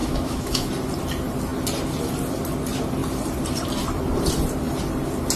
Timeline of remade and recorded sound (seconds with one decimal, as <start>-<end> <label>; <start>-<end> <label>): 0.0-0.7 remade; 0.7-5.4 recorded